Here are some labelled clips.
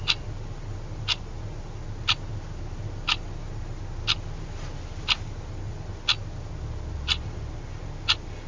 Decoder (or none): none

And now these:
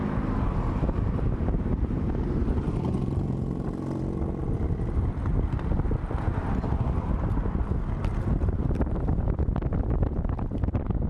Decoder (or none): vocoder, BigVGAN v2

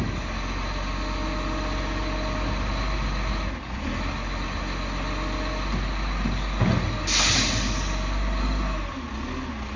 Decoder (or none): none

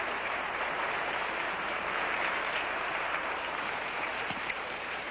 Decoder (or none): vocoder, BigVGAN v2